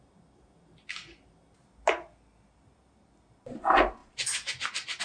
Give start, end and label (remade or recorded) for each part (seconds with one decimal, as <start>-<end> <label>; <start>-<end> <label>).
0.0-5.0 recorded